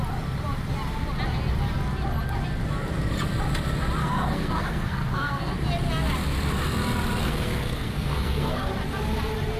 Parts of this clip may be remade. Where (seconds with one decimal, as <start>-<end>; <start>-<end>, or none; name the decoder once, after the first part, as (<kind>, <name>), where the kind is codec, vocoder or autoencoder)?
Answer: 4.0-5.5 (codec, SNAC); 7.2-8.7